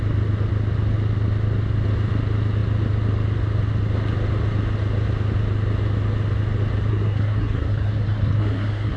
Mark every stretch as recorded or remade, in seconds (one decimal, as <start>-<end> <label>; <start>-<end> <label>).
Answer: 0.0-6.9 recorded; 6.9-9.0 remade